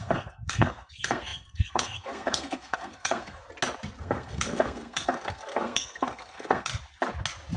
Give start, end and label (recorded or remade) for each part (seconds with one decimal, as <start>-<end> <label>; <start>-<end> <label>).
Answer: 0.0-3.4 remade; 3.4-4.0 recorded; 4.0-6.7 remade; 6.7-7.6 recorded